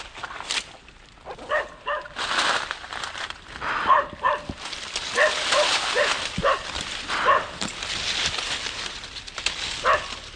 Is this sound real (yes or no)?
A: no